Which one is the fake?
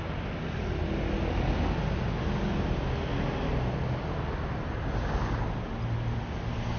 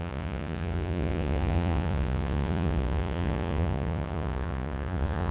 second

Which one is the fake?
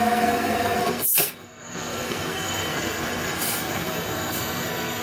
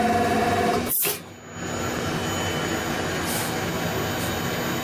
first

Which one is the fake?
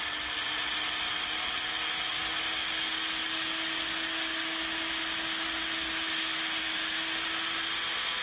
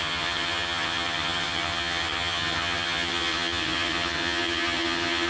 second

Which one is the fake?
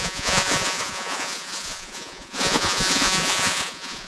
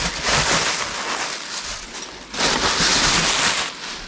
first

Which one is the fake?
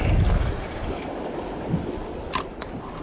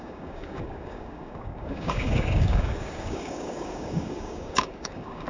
second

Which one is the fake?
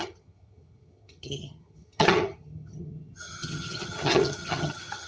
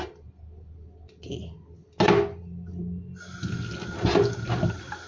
first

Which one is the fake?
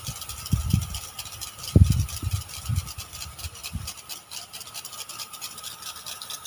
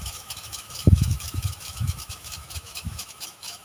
second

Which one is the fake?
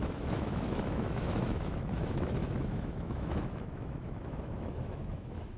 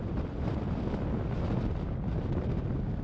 first